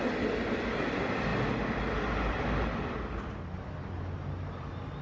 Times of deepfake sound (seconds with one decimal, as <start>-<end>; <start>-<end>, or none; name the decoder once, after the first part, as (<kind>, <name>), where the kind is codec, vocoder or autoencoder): none